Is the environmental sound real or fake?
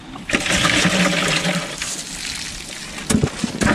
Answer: real